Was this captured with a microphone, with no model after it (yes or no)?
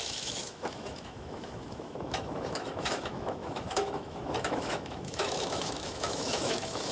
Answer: no